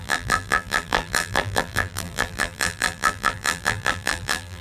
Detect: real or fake fake